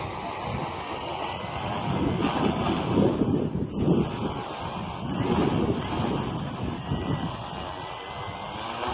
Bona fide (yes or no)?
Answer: yes